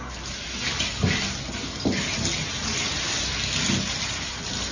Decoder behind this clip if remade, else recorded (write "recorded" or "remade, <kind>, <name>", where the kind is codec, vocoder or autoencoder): recorded